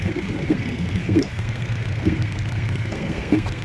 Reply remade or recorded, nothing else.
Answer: remade